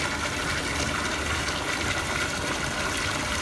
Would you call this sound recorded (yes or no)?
yes